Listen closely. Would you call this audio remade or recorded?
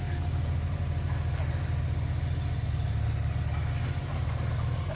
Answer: recorded